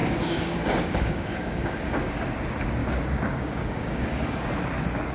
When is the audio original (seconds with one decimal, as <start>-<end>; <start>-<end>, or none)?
2.2-2.8; 4.5-5.1